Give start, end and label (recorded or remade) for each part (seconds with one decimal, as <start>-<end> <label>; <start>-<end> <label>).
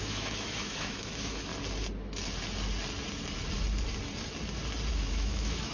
0.0-1.5 remade; 1.5-4.9 recorded; 4.9-5.7 remade